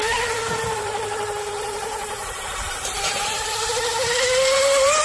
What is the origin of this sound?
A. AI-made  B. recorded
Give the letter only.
A